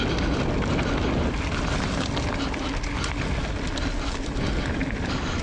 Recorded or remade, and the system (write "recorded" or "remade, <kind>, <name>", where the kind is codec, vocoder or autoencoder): recorded